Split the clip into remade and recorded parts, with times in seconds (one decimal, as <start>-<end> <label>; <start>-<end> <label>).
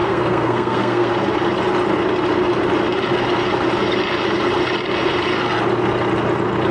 0.0-1.1 remade; 1.1-6.7 recorded